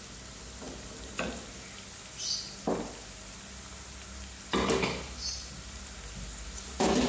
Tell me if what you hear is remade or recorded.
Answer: recorded